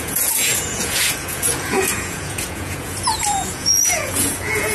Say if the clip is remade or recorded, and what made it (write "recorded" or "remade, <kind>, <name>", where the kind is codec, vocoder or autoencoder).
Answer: remade, vocoder, Vocos